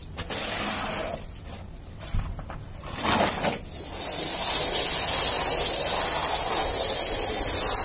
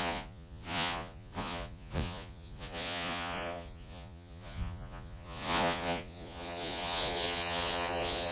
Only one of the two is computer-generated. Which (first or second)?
second